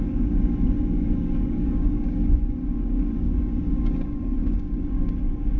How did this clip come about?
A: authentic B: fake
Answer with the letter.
B